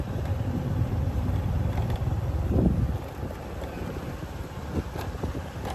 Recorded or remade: remade